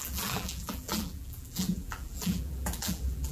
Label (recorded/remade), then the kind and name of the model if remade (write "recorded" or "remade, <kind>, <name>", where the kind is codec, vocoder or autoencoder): remade, vocoder, BigVGAN v2